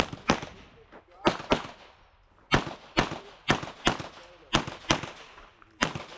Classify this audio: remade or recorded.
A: recorded